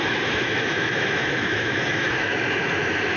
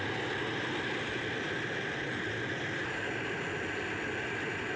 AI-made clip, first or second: first